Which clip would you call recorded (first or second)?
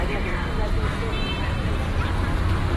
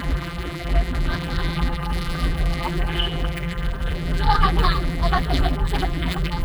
first